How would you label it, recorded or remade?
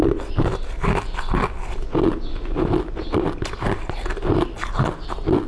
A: recorded